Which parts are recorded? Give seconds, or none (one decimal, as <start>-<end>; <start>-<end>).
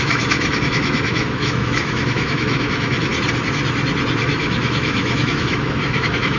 3.1-4.2